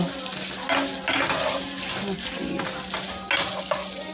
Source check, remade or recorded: recorded